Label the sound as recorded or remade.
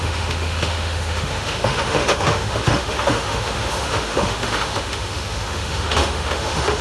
remade